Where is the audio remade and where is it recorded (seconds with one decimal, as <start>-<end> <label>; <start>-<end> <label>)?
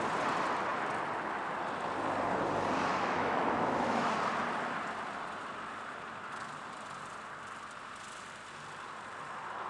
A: 0.0-2.9 recorded; 2.9-4.1 remade; 4.1-9.7 recorded